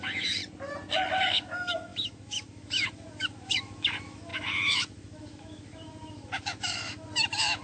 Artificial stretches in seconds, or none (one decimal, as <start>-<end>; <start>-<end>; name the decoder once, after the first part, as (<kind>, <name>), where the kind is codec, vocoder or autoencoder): 0.0-0.4 (autoencoder, DAC-VAE); 1.2-7.6